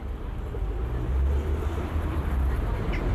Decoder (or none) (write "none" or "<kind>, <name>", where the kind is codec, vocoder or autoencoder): none